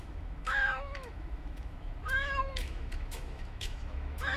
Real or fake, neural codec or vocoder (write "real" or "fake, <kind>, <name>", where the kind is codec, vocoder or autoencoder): fake, autoencoder, DAC-VAE